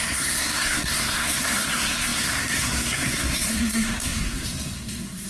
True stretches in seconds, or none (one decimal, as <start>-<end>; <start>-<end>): none

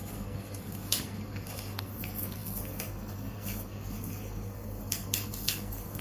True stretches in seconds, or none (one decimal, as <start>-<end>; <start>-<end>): none

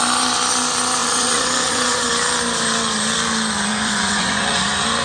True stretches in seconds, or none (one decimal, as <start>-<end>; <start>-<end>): 0.0-1.0; 2.0-3.7; 4.6-5.0